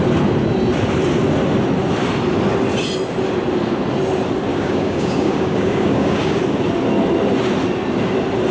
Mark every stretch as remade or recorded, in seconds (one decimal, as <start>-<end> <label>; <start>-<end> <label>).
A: 0.0-4.5 recorded; 4.5-6.4 remade; 6.4-8.5 recorded